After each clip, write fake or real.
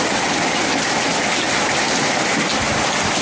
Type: real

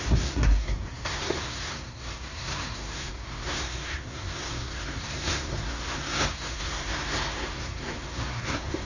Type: fake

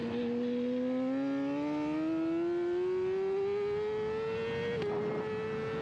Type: real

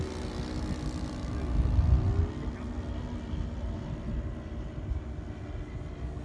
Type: real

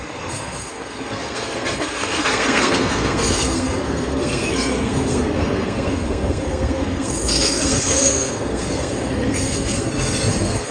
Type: fake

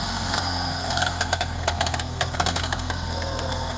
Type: fake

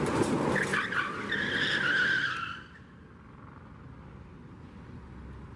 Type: real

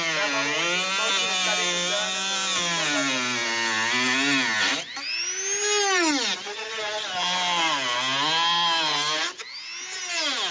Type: real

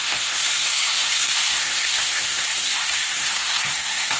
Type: fake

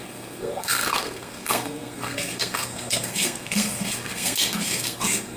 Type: fake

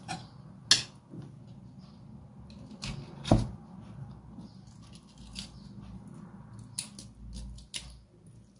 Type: real